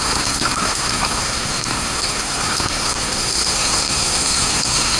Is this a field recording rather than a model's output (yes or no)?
no